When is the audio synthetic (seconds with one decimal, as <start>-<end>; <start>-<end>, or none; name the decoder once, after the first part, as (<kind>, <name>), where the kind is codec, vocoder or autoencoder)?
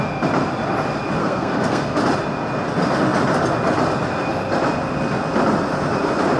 1.2-2.0 (codec, SNAC)